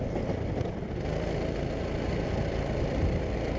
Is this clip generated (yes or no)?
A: no